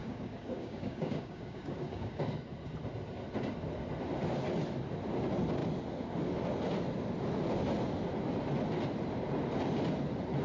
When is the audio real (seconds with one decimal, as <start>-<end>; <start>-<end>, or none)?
2.2-10.4